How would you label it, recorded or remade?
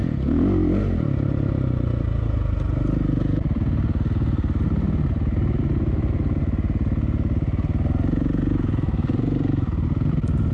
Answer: recorded